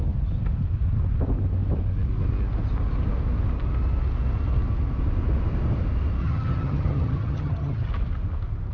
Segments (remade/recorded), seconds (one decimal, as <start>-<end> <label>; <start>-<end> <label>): 0.0-6.2 recorded; 6.2-7.9 remade; 7.9-8.7 recorded